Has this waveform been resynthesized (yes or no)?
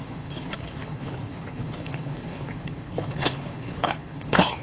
yes